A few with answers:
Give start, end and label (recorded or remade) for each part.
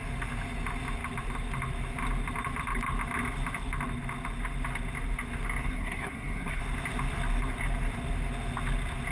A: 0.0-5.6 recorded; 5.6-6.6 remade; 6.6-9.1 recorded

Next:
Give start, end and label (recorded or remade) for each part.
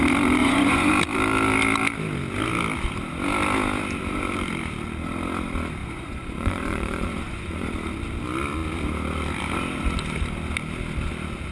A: 0.0-0.4 recorded; 0.4-0.9 remade; 0.9-5.8 recorded; 5.8-7.7 remade; 7.7-11.5 recorded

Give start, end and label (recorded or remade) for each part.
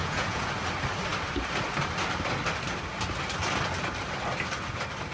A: 0.0-0.5 remade; 0.5-5.1 recorded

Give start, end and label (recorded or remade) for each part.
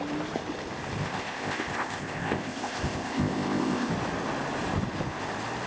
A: 0.0-1.0 recorded; 1.0-3.9 remade; 3.9-5.7 recorded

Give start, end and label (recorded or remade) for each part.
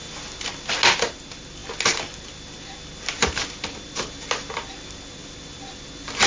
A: 0.0-6.3 recorded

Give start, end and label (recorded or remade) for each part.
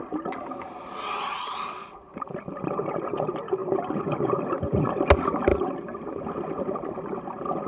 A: 0.0-7.7 recorded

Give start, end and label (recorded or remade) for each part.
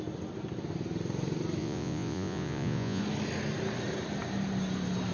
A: 0.0-1.6 recorded; 1.6-3.0 remade; 3.0-5.1 recorded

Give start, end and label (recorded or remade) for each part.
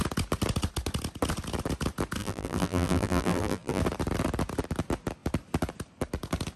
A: 0.0-2.2 recorded; 2.2-3.8 remade; 3.8-6.6 recorded